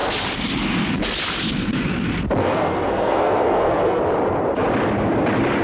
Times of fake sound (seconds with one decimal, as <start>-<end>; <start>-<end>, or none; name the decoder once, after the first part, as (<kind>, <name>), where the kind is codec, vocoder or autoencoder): 2.4-4.0 (codec, SNAC)